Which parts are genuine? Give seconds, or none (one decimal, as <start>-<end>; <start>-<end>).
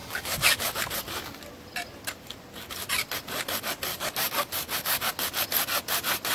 0.8-3.9; 5.1-6.3